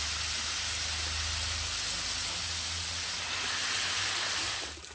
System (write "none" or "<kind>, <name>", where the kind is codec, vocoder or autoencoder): none